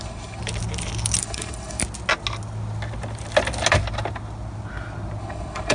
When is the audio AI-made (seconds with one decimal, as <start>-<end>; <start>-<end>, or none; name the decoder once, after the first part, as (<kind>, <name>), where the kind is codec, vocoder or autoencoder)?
0.0-0.4 (codec, HILCodec); 1.2-1.8; 5.2-5.7